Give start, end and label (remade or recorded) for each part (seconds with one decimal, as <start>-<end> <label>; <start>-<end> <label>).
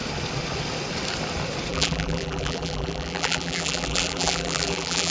0.0-1.7 recorded; 1.7-5.1 remade